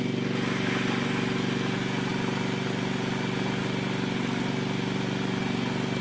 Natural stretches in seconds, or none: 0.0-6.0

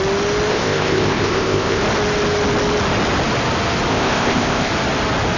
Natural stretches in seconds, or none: 0.0-0.5; 1.8-3.9; 4.7-5.4

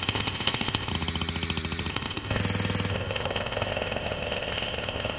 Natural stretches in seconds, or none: 0.9-1.9; 2.4-2.9

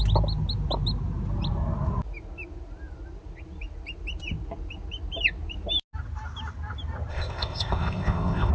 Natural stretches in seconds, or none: 0.0-7.1

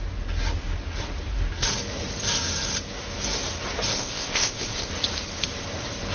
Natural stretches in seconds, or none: 0.0-3.9; 4.9-6.1